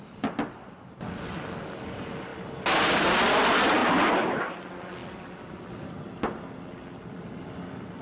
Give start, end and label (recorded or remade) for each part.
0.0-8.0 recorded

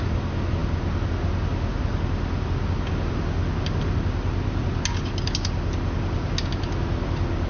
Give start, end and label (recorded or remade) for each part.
0.0-7.5 recorded